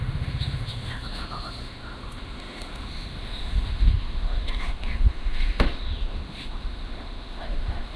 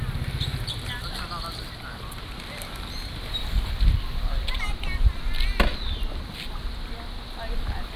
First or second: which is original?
second